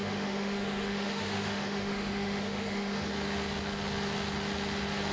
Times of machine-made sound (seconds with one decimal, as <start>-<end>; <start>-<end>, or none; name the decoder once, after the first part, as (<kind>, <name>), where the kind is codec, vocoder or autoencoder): 0.0-3.1 (autoencoder, DAC-VAE)